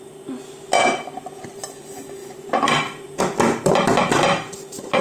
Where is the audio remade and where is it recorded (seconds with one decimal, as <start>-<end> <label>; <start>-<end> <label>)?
0.0-2.2 recorded; 2.2-3.2 remade; 3.2-5.0 recorded